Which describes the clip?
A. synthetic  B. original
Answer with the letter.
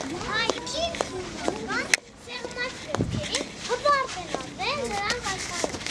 B